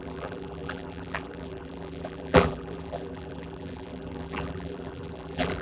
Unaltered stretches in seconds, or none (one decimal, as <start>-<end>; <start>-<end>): none